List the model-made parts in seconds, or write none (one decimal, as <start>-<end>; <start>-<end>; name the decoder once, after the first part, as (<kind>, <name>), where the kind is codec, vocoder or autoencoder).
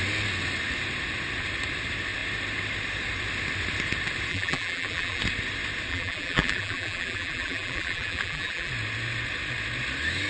4.3-5.2 (vocoder, BigVGAN v2); 5.9-8.7